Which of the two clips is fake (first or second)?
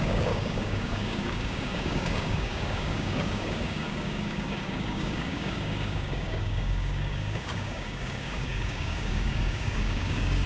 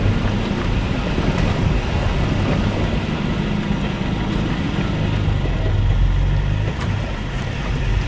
first